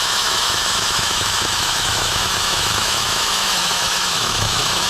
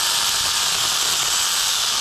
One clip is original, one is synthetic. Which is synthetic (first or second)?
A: first